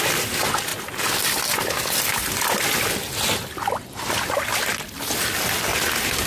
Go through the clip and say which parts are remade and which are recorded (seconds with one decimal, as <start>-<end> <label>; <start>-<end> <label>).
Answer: 0.0-6.3 recorded